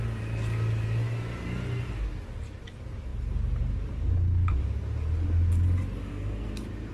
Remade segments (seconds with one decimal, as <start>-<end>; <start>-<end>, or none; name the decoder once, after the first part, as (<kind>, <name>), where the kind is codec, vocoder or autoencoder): 6.0-6.5 (codec, SNAC)